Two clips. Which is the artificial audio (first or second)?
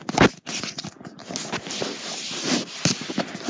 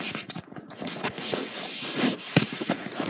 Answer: second